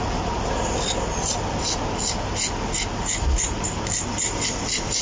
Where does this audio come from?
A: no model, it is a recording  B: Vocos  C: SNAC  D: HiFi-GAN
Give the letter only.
A